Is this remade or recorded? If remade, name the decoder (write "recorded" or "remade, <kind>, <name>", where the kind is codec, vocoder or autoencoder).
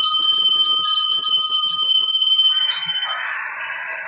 remade, vocoder, BigVGAN v2